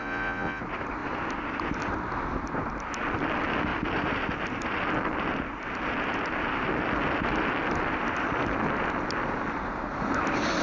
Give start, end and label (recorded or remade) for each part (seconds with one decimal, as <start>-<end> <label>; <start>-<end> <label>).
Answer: 0.0-0.6 remade; 0.6-10.6 recorded